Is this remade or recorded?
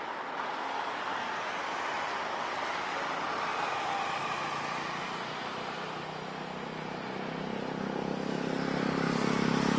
recorded